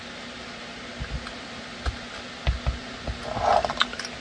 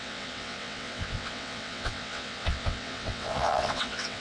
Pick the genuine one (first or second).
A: first